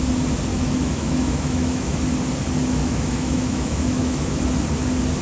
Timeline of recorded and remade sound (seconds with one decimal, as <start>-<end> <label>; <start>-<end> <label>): 0.0-0.5 recorded; 0.5-2.0 remade; 2.0-2.8 recorded; 2.8-4.4 remade; 4.4-5.2 recorded